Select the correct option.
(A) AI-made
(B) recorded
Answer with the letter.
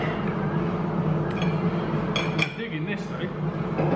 B